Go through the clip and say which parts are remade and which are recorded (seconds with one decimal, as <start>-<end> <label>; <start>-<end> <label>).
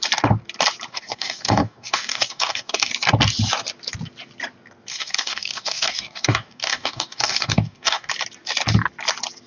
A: 0.0-0.9 recorded; 0.9-2.9 remade; 2.9-4.9 recorded; 4.9-8.1 remade; 8.1-9.5 recorded